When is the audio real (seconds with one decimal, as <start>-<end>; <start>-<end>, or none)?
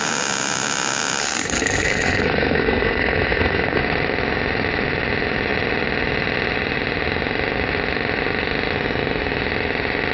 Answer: 0.0-1.2; 3.8-10.1